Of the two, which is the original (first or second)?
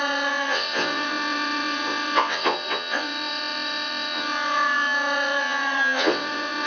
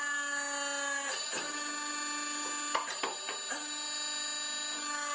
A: second